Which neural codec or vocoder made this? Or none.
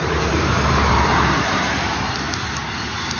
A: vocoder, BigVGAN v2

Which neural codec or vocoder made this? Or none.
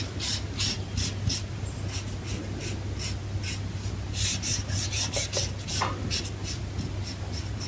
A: none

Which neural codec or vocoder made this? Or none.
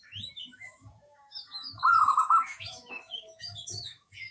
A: autoencoder, DAC-VAE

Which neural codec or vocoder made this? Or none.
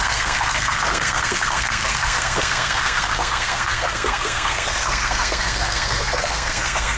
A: codec, SNAC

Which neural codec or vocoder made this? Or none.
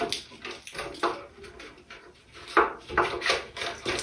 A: none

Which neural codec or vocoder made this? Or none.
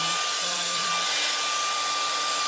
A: vocoder, BigVGAN v2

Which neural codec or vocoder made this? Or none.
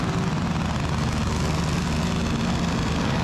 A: none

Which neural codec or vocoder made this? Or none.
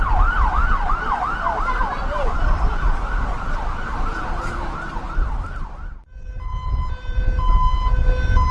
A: none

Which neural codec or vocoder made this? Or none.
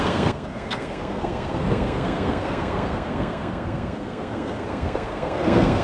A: codec, SNAC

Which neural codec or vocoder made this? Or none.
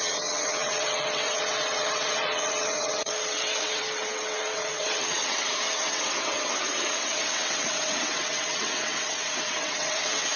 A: vocoder, WaveNeXt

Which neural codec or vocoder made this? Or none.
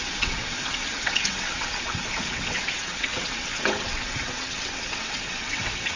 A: vocoder, WaveNeXt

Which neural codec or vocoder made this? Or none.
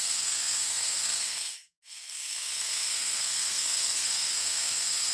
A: codec, SNAC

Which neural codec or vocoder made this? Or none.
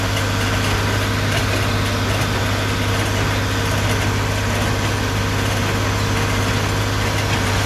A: none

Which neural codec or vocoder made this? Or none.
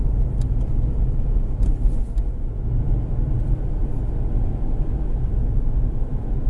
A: none